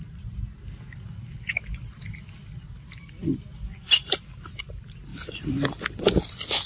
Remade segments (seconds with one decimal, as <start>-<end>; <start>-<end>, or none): 3.5-4.6; 5.1-6.7